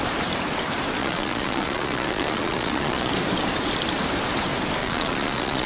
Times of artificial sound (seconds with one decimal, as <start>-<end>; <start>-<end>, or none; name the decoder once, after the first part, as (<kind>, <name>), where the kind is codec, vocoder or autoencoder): 1.0-3.1 (vocoder, Vocos); 4.8-5.7